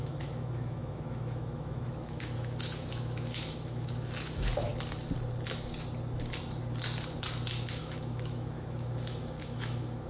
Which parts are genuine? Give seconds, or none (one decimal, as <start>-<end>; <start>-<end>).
4.7-7.8